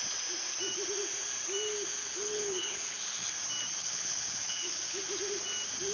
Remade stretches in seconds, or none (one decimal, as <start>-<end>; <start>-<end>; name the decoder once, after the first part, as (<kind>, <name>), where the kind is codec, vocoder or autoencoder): 2.0-3.3 (codec, HILCodec); 3.8-5.0